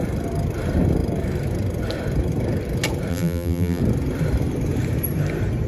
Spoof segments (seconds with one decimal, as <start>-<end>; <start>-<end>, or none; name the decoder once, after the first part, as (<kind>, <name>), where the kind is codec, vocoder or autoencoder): 3.1-3.8 (vocoder, BigVGAN v2)

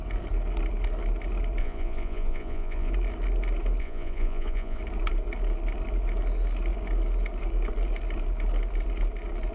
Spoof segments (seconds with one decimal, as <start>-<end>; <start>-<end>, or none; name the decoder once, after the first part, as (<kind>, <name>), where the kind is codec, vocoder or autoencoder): 1.6-2.9 (vocoder, Vocos); 3.8-4.8

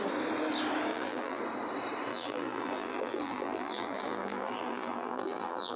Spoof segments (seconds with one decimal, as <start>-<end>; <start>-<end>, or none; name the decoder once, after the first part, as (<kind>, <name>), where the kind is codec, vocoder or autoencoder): 0.9-1.4 (vocoder, BigVGAN v2); 2.1-5.8

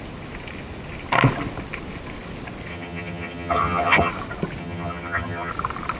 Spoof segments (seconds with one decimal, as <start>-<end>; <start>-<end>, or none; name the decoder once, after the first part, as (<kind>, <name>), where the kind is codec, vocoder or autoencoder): 2.7-4.1 (vocoder, HiFi-GAN); 4.6-5.5

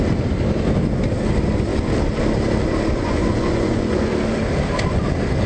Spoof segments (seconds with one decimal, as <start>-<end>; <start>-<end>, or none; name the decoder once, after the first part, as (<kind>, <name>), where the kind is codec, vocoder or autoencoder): 3.0-4.1 (vocoder, Vocos)

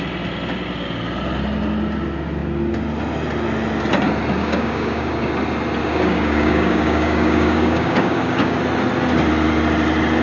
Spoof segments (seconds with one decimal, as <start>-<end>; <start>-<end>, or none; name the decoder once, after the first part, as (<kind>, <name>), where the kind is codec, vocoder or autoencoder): 4.4-5.3 (codec, DAC); 5.8-8.6

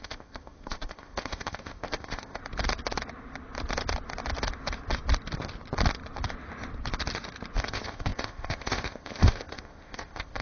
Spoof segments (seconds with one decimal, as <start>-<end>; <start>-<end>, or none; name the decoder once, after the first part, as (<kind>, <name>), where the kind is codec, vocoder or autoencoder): 0.0-2.4 (codec, ZipCodec); 7.6-10.4

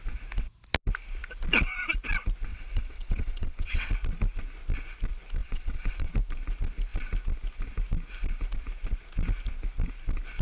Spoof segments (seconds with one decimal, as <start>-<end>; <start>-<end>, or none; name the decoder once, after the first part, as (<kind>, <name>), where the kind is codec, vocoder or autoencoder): 2.5-3.9 (vocoder, WaveNeXt); 5.4-6.1